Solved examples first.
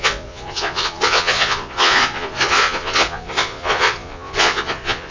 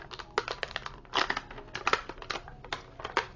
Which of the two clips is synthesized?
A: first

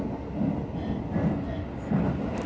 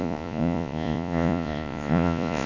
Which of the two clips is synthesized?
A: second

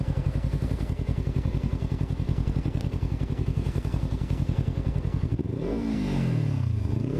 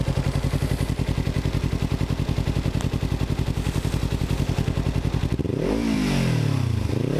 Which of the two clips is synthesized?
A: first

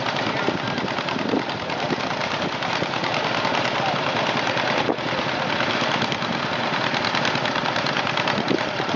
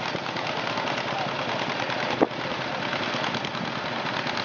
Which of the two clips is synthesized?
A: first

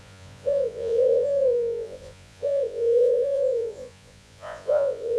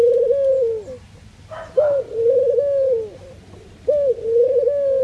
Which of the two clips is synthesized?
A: first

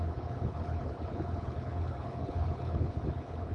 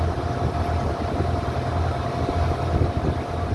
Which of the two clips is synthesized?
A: first